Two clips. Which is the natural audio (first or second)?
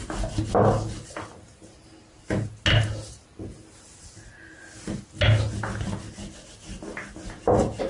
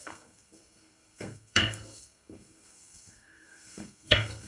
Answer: first